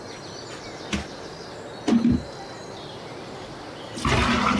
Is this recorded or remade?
recorded